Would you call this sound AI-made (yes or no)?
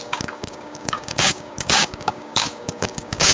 yes